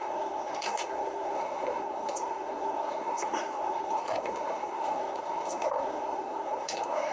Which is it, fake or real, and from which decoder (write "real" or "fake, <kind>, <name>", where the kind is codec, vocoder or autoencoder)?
fake, codec, SNAC